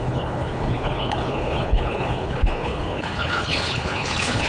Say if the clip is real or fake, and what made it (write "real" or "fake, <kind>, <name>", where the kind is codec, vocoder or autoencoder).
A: fake, codec, HILCodec